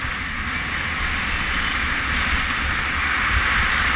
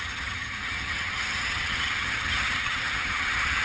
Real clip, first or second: first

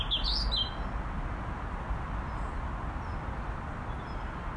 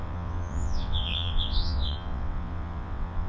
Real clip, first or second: first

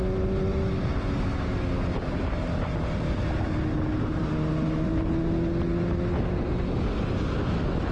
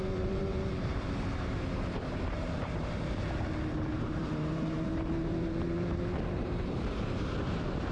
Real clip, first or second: first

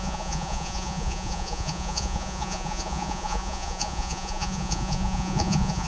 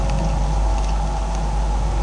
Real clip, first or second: second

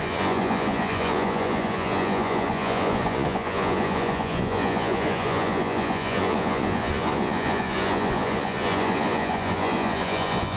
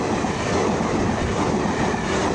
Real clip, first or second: second